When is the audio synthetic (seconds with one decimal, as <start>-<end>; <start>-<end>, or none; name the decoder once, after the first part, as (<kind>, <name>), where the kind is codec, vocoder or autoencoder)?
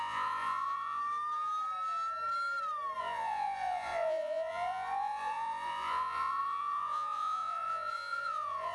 0.0-1.0 (vocoder, Vocos); 3.0-8.7